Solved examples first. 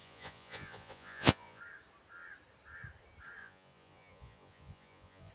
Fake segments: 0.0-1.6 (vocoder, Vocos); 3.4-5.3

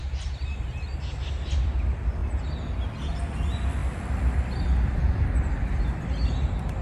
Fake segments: none

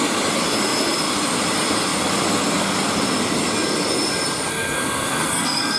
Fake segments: 4.5-5.8 (codec, SNAC)

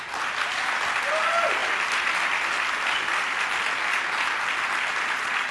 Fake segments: none